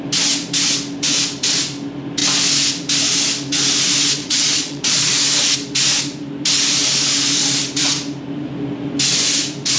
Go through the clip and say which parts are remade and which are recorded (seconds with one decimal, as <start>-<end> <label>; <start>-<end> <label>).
0.0-4.2 recorded; 4.2-5.1 remade; 5.1-9.8 recorded